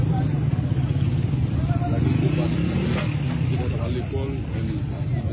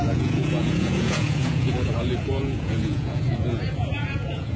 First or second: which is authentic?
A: first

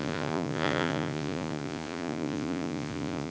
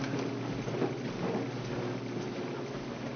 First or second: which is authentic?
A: second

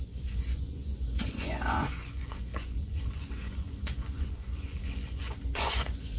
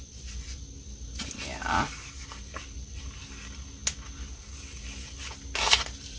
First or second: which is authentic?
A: second